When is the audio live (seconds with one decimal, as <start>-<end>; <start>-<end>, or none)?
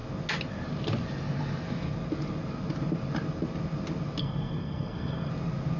0.0-4.2; 5.3-5.8